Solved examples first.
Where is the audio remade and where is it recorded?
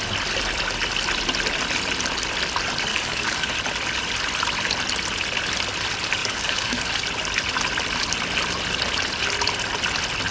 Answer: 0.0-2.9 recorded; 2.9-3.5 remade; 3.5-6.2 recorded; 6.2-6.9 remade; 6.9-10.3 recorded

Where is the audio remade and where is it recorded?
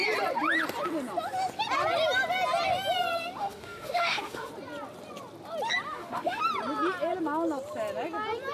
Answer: 0.0-3.4 recorded; 3.4-4.5 remade; 4.5-5.9 recorded; 5.9-6.4 remade; 6.4-8.5 recorded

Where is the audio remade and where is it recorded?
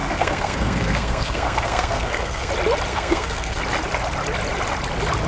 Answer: 0.0-2.5 remade; 2.5-2.9 recorded; 2.9-3.6 remade; 3.6-5.3 recorded